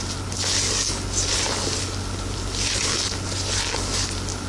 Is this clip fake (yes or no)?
no